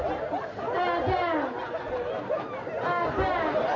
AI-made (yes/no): no